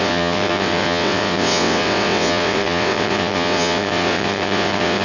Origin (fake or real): fake